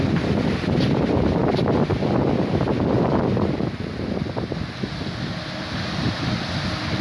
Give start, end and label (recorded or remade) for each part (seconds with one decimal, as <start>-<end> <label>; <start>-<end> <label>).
0.0-7.0 recorded